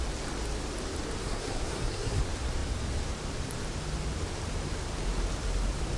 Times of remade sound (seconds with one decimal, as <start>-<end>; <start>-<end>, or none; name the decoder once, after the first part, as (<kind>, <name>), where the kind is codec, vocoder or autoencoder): 1.2-2.2 (codec, SNAC)